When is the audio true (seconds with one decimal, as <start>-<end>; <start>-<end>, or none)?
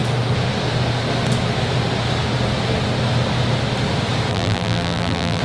0.0-4.3